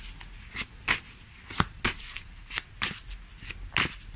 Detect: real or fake real